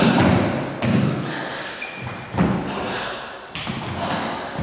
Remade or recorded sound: recorded